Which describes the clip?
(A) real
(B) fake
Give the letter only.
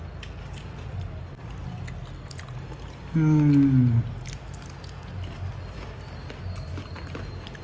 A